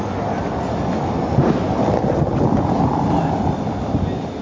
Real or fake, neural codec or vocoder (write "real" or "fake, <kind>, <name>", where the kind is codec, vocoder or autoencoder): real